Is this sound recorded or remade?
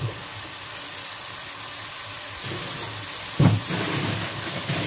recorded